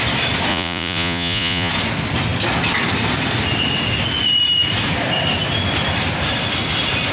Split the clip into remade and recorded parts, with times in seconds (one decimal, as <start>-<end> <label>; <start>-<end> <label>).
0.0-0.5 recorded; 0.5-1.7 remade; 1.7-7.1 recorded